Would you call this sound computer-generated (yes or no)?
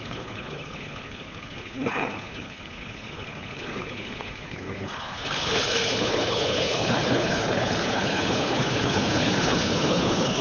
yes